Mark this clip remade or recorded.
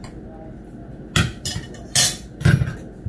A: recorded